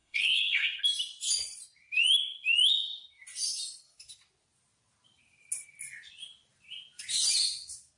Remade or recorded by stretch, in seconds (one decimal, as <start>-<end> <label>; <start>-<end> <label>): 0.0-0.8 remade; 0.8-8.0 recorded